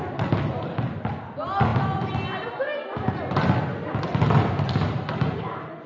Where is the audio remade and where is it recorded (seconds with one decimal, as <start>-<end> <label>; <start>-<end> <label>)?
0.0-5.9 recorded